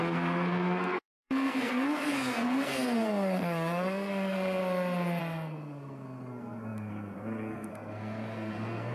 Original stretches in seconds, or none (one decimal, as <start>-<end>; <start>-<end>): 4.6-5.2